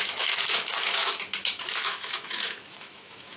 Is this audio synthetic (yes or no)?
yes